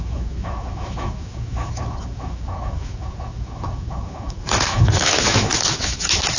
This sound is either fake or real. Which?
fake